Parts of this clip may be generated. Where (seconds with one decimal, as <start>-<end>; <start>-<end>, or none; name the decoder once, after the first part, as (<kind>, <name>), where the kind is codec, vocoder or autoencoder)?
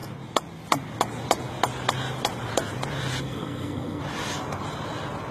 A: 3.2-4.0 (codec, SNAC)